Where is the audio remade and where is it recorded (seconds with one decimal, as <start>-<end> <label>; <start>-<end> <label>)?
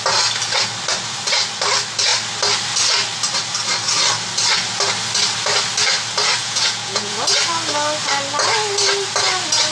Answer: 0.0-6.4 recorded; 6.4-7.2 remade; 7.2-9.7 recorded